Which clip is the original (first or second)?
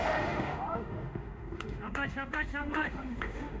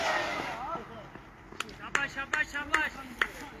second